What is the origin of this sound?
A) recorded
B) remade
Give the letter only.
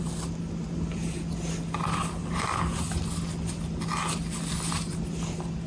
A